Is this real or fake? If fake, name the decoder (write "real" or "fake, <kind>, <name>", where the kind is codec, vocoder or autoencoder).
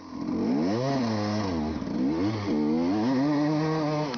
real